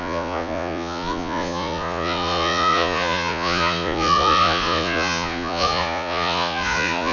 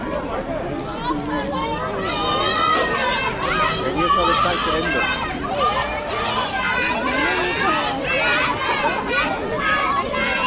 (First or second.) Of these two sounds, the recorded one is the second